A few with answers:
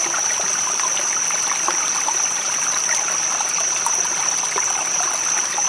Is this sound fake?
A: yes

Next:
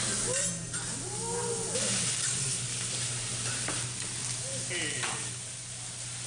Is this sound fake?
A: no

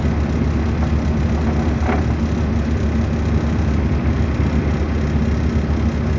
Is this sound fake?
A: no